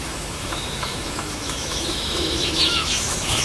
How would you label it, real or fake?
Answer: fake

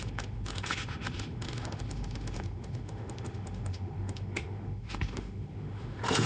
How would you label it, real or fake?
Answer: fake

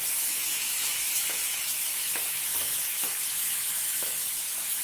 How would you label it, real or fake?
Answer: fake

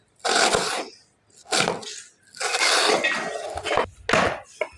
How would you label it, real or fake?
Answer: real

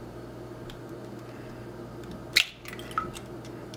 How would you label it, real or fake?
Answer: real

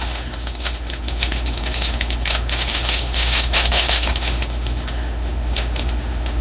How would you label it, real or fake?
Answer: fake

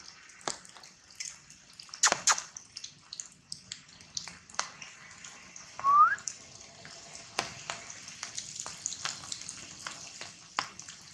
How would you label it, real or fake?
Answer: real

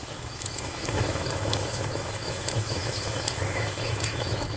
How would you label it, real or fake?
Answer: fake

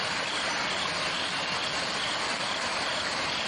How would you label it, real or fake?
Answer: real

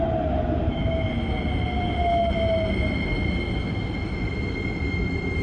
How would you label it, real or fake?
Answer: real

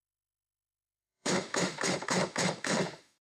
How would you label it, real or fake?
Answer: fake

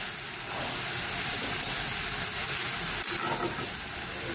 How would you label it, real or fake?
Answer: real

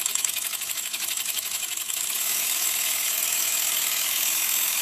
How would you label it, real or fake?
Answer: fake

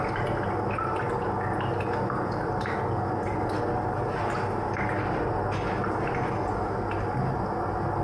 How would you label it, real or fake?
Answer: real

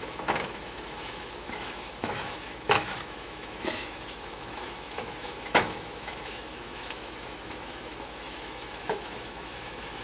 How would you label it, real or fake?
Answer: fake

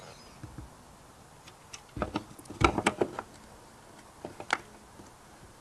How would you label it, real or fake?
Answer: real